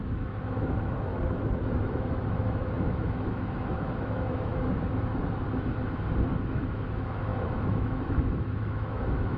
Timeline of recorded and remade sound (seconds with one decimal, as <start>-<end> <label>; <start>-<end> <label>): 0.0-5.8 remade; 5.8-6.4 recorded; 6.4-9.4 remade